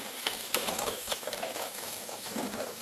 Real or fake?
fake